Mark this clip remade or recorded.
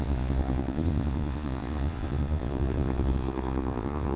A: remade